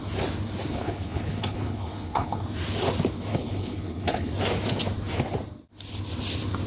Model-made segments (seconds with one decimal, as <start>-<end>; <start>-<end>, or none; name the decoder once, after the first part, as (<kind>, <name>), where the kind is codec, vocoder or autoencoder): 0.7-2.4 (codec, HILCodec); 3.3-4.3